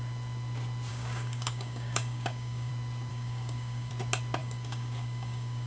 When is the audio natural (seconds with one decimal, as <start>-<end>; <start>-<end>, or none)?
0.0-0.9; 2.7-3.1; 3.9-4.4